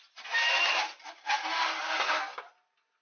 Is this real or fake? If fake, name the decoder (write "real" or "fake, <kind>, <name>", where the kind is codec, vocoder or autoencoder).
real